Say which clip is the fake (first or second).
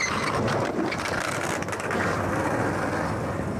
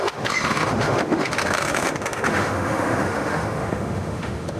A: second